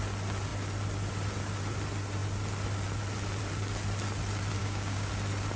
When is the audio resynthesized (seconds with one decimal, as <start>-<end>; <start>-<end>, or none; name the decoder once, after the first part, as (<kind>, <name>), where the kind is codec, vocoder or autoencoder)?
4.6-5.1 (codec, DAC)